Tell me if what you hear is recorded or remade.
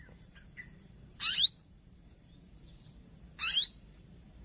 remade